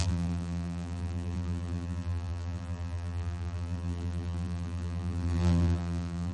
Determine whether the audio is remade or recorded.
remade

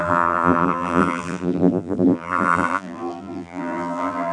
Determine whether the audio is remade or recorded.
remade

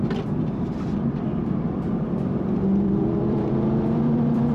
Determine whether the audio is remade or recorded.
remade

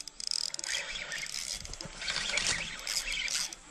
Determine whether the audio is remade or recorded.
recorded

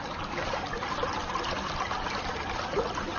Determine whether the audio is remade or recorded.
recorded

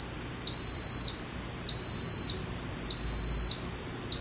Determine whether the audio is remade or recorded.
recorded